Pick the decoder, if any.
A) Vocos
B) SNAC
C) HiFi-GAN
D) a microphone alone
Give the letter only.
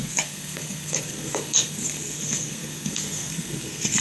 B